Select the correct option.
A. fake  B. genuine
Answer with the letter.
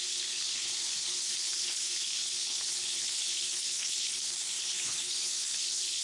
A